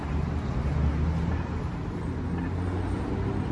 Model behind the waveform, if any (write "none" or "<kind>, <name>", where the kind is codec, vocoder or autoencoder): none